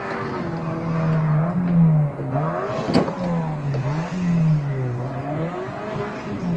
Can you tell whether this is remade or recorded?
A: recorded